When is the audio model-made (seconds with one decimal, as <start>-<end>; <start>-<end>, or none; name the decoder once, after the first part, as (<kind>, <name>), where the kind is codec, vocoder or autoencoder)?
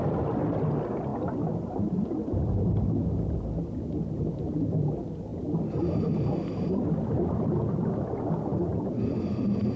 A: none